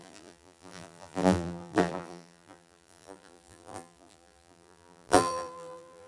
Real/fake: fake